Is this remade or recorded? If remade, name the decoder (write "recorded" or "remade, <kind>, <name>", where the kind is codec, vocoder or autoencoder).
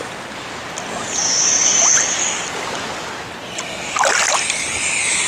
recorded